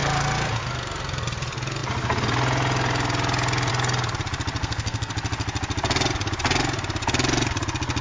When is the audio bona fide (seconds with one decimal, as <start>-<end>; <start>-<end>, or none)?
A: 0.0-4.6; 5.1-8.0